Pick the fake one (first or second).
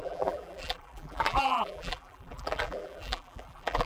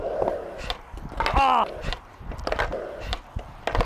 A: first